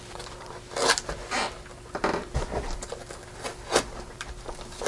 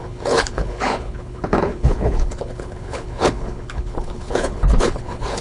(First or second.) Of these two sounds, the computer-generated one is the second